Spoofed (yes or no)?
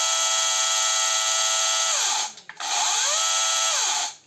no